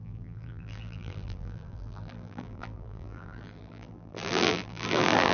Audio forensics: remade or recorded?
remade